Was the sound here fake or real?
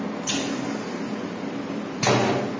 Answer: real